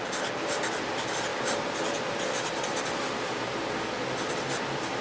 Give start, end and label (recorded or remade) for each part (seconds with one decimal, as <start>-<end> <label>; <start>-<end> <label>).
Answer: 0.0-5.0 recorded